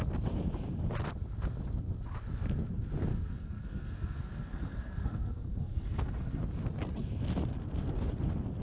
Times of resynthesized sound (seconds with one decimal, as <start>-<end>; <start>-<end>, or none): 3.1-6.4